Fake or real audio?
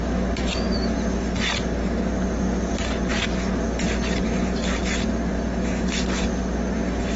real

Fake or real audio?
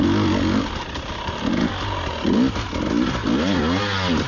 real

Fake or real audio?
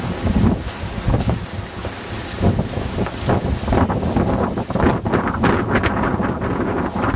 real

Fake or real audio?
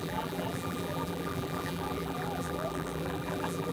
fake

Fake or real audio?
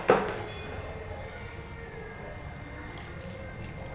real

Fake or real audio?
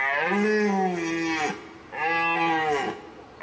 real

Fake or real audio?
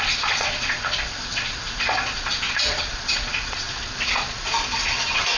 fake